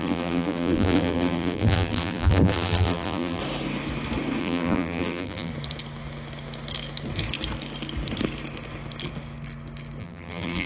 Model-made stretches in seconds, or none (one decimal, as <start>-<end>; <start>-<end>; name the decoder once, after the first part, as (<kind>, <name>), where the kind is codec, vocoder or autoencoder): 0.0-3.4 (vocoder, BigVGAN v2); 4.4-5.5; 10.0-10.7